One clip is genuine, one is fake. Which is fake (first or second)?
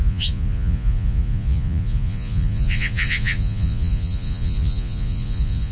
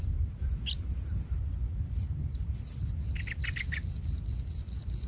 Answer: first